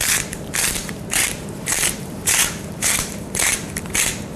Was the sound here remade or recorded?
remade